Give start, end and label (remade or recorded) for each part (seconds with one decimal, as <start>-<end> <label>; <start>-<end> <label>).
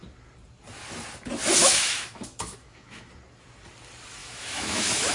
0.0-1.6 recorded; 1.6-3.1 remade; 3.1-4.2 recorded; 4.2-5.1 remade